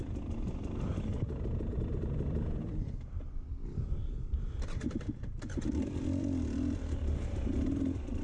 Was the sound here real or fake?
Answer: fake